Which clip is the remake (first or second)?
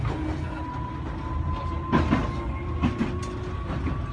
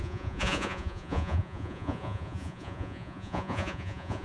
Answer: second